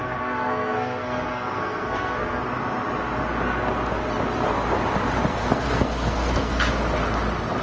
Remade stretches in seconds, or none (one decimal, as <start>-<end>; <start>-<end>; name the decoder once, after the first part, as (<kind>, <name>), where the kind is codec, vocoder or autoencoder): 0.0-2.4 (codec, SNAC); 5.3-6.7